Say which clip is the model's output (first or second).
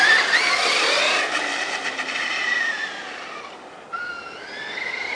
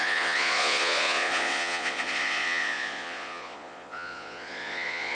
second